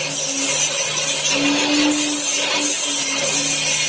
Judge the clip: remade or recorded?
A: recorded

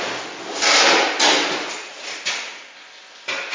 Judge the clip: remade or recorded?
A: recorded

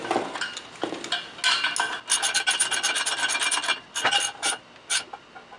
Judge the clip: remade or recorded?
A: recorded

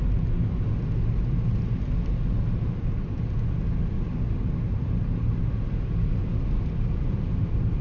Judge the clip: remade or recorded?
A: recorded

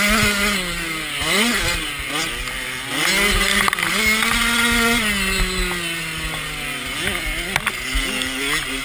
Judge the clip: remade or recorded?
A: recorded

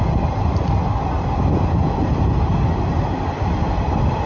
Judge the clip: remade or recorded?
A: recorded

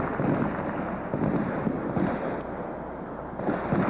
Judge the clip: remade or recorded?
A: recorded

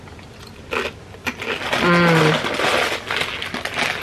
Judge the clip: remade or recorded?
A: recorded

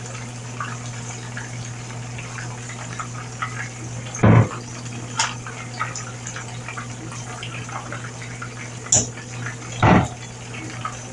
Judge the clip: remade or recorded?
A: recorded